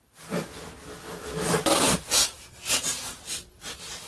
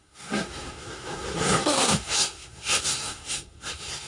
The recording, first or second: first